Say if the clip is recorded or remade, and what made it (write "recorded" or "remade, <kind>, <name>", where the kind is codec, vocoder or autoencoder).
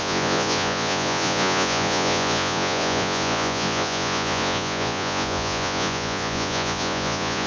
remade, vocoder, Vocos